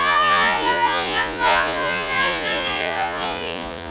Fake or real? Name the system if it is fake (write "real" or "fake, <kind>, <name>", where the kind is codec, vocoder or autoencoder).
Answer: fake, vocoder, Vocos